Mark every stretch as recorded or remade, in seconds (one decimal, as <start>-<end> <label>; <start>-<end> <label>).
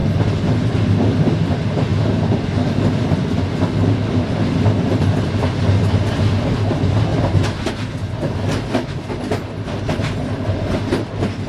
0.0-11.5 recorded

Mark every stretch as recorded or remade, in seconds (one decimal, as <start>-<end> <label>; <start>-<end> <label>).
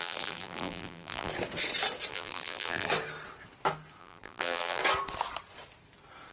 0.0-1.3 remade; 1.3-2.1 recorded; 2.1-2.9 remade; 2.9-4.0 recorded; 4.0-4.8 remade; 4.8-6.3 recorded